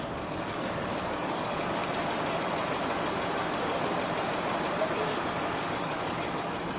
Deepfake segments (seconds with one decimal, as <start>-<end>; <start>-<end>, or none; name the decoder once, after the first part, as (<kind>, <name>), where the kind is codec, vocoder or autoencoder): 0.0-1.8 (codec, DAC); 4.8-6.8